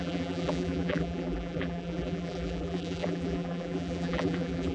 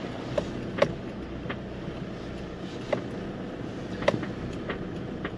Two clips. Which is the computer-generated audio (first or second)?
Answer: first